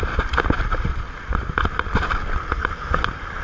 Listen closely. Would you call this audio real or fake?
real